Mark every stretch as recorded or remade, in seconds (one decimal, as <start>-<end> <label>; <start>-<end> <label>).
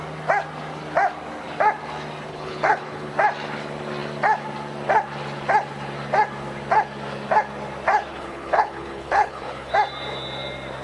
0.0-2.3 recorded; 2.3-3.1 remade; 3.1-8.1 recorded; 8.1-9.7 remade; 9.7-10.8 recorded